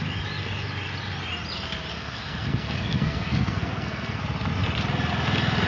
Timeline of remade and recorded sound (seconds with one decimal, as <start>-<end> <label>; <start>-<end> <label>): 0.0-1.9 recorded; 1.9-4.2 remade; 4.2-5.7 recorded